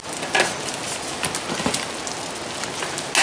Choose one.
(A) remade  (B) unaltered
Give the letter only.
B